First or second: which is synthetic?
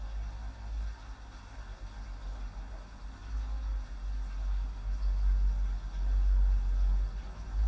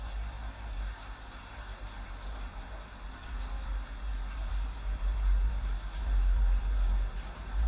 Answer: second